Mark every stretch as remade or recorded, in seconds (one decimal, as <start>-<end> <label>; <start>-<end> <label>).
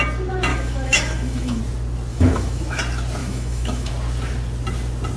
0.0-0.5 recorded; 0.5-1.6 remade; 1.6-2.1 recorded; 2.1-2.8 remade; 2.8-3.2 recorded; 3.2-3.9 remade; 3.9-5.2 recorded